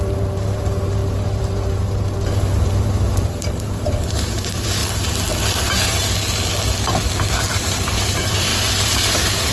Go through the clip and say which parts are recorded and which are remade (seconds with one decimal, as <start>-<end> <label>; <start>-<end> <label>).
0.0-4.8 remade; 4.8-5.6 recorded; 5.6-6.0 remade; 6.0-7.5 recorded; 7.5-9.5 remade